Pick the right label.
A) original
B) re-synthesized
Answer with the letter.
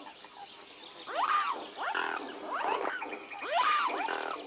A